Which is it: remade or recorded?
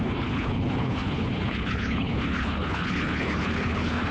remade